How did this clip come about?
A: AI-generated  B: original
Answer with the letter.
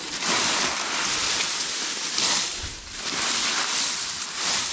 A